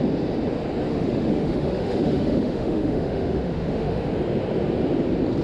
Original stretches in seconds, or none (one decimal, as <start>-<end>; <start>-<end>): 0.0-0.9; 4.1-5.4